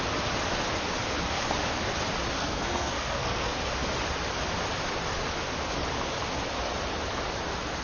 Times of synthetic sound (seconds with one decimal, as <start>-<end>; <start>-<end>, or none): 2.4-3.6